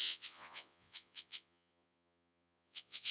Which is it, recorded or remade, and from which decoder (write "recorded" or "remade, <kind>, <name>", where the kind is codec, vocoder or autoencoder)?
remade, vocoder, Vocos